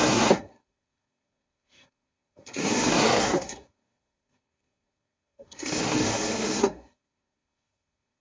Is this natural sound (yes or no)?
no